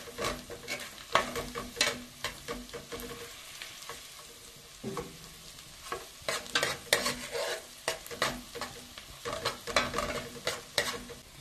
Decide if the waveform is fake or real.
real